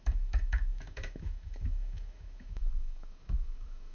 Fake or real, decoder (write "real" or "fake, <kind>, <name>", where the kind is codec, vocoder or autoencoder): fake, autoencoder, DAC-VAE